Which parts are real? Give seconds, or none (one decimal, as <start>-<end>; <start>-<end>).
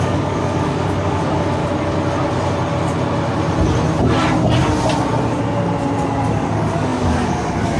1.6-6.3